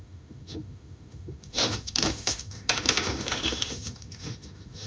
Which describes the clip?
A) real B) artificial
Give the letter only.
B